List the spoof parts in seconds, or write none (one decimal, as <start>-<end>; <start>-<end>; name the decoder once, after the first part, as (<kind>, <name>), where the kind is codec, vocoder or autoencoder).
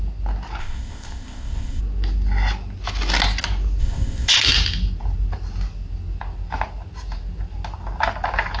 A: 0.6-1.8 (codec, ZipCodec); 3.8-4.4